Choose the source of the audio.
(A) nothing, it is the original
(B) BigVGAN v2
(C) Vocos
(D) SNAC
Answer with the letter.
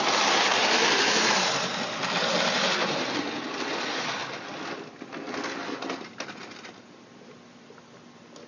A